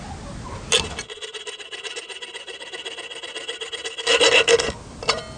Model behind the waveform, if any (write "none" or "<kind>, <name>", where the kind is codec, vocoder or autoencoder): none